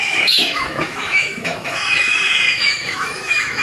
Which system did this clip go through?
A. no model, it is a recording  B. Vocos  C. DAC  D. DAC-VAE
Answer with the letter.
D